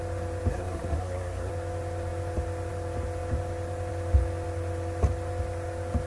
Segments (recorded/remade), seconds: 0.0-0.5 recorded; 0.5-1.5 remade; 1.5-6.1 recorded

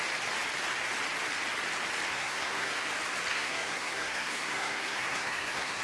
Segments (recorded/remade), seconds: 0.0-2.1 recorded; 2.1-2.9 remade; 2.9-3.3 recorded; 3.3-5.8 remade